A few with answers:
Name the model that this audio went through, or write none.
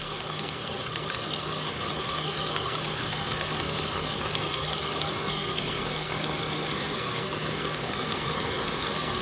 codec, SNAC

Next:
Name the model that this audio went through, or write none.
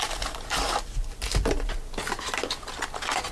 none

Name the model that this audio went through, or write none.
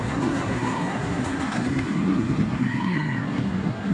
codec, SNAC